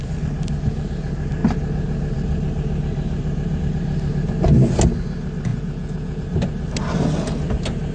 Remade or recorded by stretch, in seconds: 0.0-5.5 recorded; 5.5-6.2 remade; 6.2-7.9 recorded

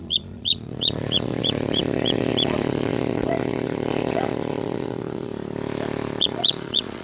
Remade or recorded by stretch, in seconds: 0.0-5.3 remade; 5.3-6.2 recorded; 6.2-7.0 remade

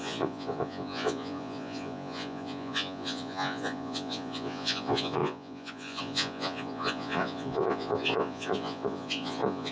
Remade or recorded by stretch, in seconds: 0.0-9.7 remade

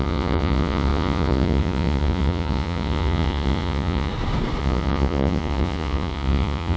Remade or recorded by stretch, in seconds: 0.0-4.1 remade; 4.1-4.6 recorded; 4.6-6.8 remade

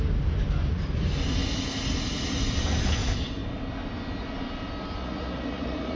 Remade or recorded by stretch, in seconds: 0.0-5.0 recorded; 5.0-6.0 remade

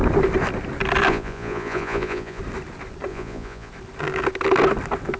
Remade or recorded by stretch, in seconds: 0.0-1.1 recorded; 1.1-2.4 remade; 2.4-3.1 recorded; 3.1-3.7 remade; 3.7-5.2 recorded